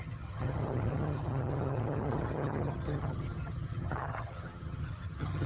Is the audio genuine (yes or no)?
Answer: no